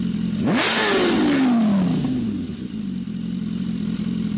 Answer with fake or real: real